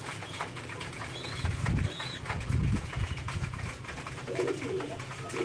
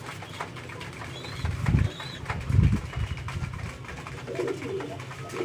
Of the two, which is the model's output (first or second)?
first